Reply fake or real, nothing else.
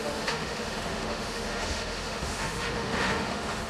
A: fake